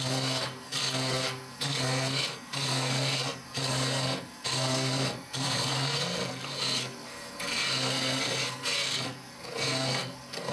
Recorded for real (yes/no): no